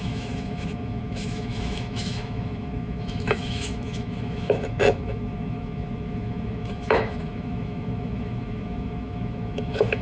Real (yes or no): no